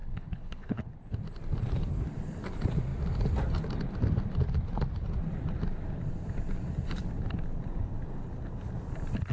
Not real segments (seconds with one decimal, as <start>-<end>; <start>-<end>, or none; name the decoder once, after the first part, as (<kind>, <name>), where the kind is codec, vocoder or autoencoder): 0.0-0.9 (codec, HILCodec)